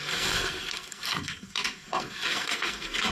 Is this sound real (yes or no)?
no